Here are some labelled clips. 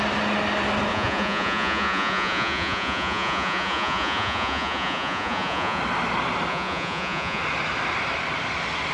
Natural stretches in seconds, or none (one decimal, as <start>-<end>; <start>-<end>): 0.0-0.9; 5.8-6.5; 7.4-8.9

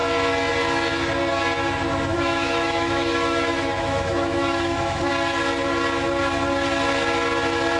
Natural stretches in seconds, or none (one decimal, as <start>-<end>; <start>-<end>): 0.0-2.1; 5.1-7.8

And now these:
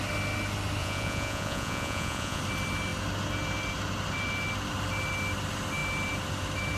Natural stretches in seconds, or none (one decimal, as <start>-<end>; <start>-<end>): 0.0-0.8; 2.4-6.8

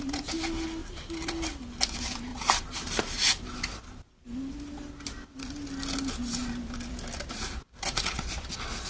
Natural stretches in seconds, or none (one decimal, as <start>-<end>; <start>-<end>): 0.0-0.8; 1.5-2.3; 4.1-8.9